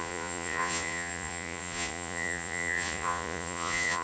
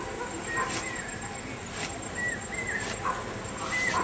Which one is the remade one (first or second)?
first